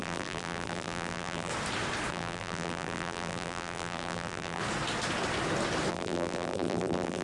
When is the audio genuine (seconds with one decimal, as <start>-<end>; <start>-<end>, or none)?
1.5-2.1; 4.6-5.9